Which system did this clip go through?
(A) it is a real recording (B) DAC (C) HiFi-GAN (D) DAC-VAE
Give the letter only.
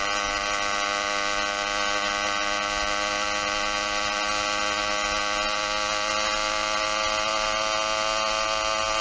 A